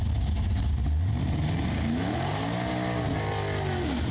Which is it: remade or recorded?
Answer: recorded